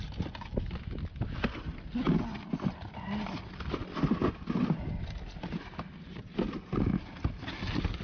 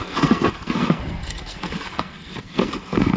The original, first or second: first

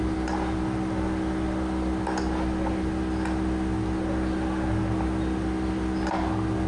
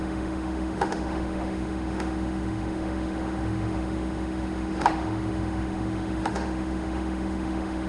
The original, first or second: first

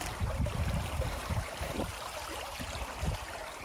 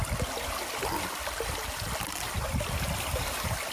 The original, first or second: second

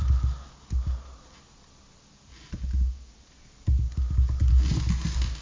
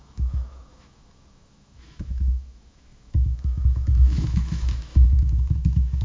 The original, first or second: first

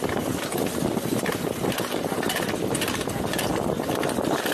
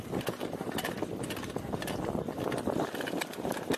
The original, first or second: second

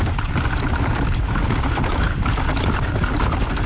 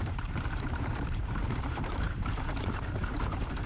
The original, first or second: first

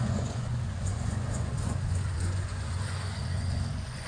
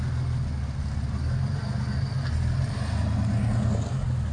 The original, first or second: second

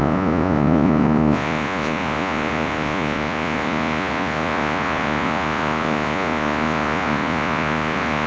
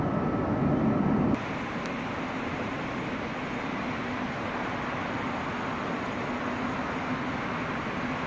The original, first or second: second